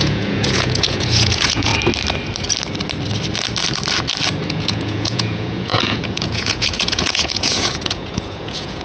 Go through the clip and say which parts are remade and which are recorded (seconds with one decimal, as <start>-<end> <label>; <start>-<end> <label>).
0.0-1.7 remade; 1.7-4.5 recorded; 4.5-8.8 remade